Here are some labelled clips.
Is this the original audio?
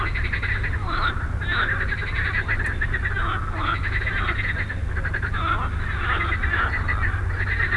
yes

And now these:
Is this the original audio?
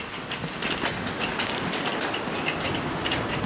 yes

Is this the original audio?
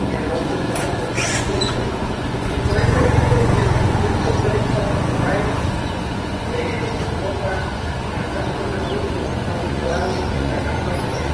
no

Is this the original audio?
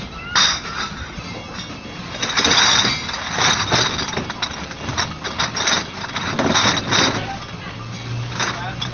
yes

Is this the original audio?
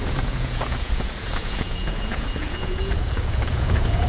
no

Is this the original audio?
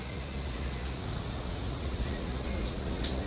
no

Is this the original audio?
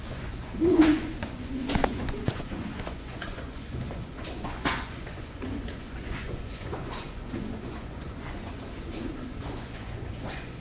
no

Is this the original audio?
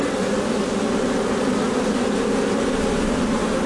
yes